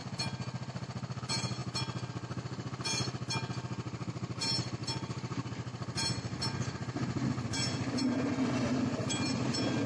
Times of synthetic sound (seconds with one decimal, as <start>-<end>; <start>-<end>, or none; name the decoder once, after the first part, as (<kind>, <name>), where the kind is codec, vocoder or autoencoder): 4.8-5.5 (vocoder, BigVGAN v2)